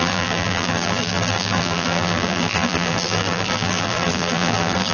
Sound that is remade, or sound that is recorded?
remade